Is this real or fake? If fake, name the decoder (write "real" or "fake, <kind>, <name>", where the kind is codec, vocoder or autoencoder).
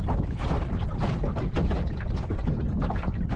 real